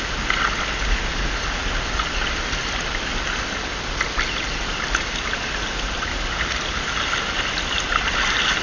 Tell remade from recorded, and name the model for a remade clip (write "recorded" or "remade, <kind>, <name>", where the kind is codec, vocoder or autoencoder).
recorded